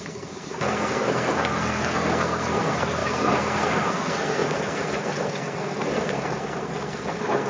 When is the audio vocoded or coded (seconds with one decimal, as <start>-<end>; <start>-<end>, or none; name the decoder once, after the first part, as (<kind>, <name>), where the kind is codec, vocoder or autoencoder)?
0.0-7.5 (codec, SNAC)